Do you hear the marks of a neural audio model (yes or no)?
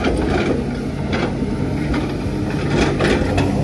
no